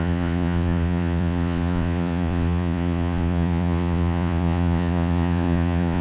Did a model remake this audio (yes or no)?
yes